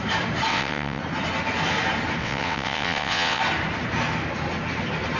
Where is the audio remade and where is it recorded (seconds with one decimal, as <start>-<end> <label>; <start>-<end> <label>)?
0.0-0.5 recorded; 0.5-1.0 remade; 1.0-2.2 recorded; 2.2-3.4 remade; 3.4-5.2 recorded